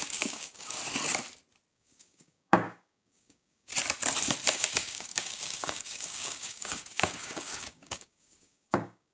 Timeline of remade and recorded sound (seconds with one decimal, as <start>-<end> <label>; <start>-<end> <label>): 0.0-0.8 remade; 0.8-1.7 recorded; 1.7-3.7 remade; 3.7-4.5 recorded; 4.5-9.1 remade